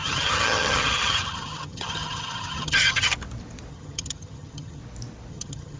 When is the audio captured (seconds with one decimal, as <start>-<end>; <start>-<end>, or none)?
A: 3.1-3.7; 4.8-5.3